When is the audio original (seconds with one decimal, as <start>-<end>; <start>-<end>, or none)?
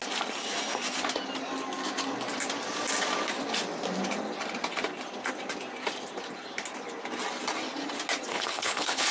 0.0-8.3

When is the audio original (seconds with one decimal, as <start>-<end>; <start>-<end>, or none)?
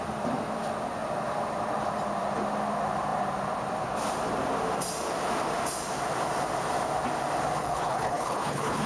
0.0-7.6